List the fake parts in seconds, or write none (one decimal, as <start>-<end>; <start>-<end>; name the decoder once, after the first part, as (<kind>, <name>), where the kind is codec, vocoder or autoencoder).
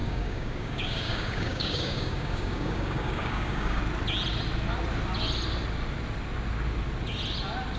0.0-3.8 (codec, DAC)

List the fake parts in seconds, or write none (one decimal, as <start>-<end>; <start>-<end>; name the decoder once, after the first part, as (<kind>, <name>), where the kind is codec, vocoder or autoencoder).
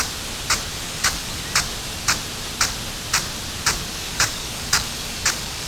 0.7-1.4 (codec, DAC); 3.9-5.7